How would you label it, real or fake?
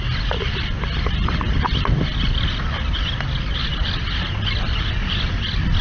real